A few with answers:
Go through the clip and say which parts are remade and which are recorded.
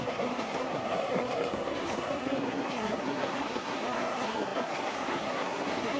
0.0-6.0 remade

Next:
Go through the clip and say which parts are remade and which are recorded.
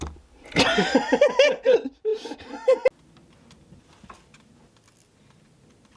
0.0-6.0 recorded